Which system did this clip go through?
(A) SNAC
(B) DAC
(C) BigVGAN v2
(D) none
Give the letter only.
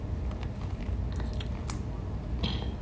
D